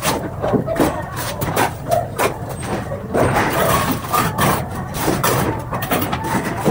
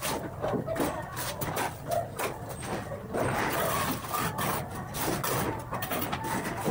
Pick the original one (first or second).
second